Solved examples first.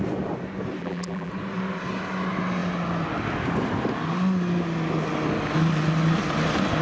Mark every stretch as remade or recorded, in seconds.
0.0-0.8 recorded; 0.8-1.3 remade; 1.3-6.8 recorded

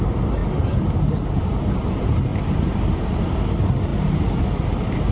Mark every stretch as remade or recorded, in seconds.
0.0-0.4 remade; 0.4-1.3 recorded; 1.3-5.1 remade

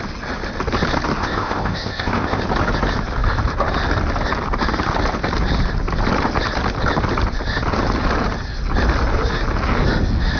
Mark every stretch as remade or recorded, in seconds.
0.0-1.2 recorded; 1.2-2.4 remade; 2.4-10.4 recorded

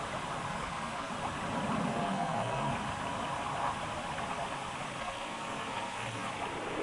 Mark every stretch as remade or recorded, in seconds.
0.0-0.5 recorded; 0.5-1.1 remade; 1.1-1.9 recorded; 1.9-2.7 remade; 2.7-5.0 recorded; 5.0-6.3 remade; 6.3-6.8 recorded

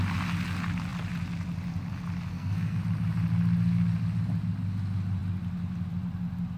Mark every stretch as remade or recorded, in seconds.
0.0-2.3 recorded; 2.3-2.8 remade; 2.8-6.6 recorded

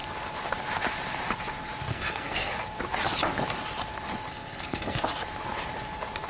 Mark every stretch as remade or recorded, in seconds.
0.0-1.9 recorded; 1.9-2.5 remade; 2.5-4.3 recorded; 4.3-5.0 remade; 5.0-6.3 recorded